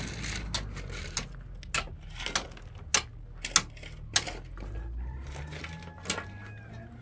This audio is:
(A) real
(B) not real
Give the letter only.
A